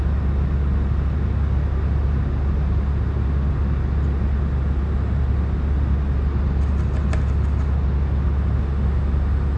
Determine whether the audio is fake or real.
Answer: real